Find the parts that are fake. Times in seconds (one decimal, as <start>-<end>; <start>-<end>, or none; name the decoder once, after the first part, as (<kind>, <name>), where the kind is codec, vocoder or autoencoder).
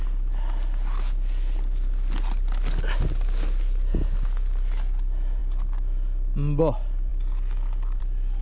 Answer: none